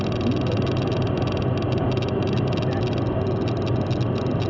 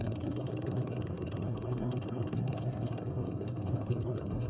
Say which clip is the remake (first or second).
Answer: second